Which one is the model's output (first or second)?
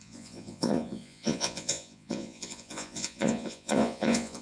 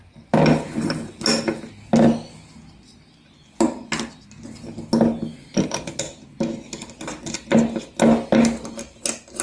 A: first